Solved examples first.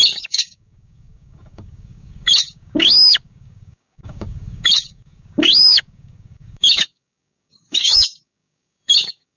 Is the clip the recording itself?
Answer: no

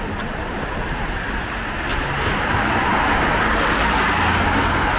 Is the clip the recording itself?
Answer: yes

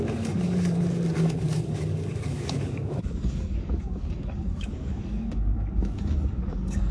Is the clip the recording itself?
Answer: no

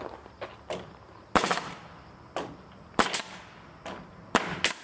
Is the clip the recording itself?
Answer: yes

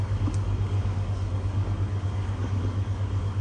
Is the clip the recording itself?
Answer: no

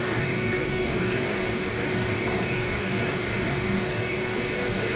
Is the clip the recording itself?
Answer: no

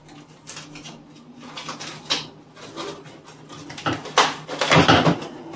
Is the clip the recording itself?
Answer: yes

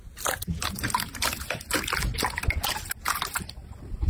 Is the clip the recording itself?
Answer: yes